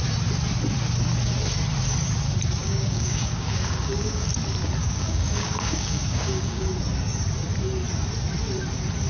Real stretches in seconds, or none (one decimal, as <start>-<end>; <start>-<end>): 0.0-2.6; 4.3-4.8; 6.7-9.1